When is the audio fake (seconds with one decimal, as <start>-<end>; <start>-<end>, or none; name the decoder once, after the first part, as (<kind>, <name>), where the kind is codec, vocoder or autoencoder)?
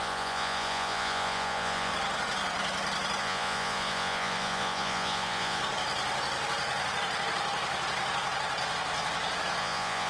0.0-1.9 (vocoder, Vocos); 3.2-5.6; 9.6-10.1